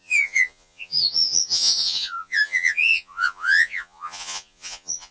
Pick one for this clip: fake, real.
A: fake